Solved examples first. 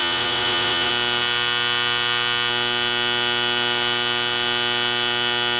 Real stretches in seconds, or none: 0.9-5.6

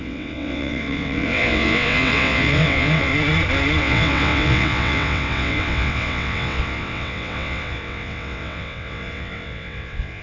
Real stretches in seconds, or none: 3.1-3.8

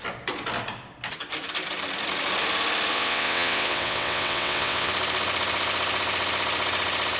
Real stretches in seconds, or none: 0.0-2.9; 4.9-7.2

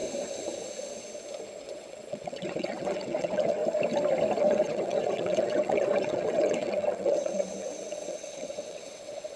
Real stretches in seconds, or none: 0.0-1.6; 3.6-4.4

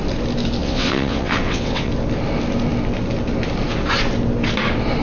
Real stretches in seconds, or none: 0.0-0.6; 1.9-5.0